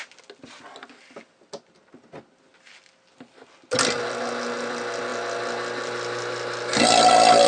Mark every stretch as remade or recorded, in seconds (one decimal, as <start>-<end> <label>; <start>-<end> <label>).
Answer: 0.0-7.5 recorded